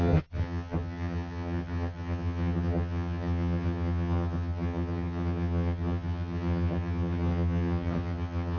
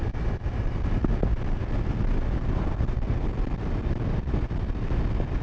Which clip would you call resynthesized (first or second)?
first